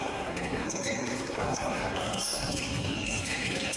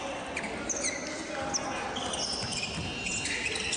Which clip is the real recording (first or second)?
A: second